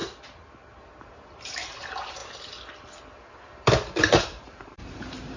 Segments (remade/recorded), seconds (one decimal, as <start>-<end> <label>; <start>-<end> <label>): 0.0-1.0 recorded; 1.0-2.2 remade; 2.2-4.0 recorded; 4.0-5.4 remade